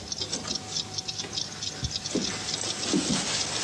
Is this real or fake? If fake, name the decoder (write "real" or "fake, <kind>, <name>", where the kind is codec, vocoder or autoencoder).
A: real